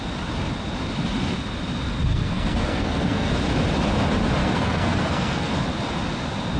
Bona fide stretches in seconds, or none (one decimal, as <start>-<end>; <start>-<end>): 0.0-2.0; 3.3-4.4; 5.5-6.6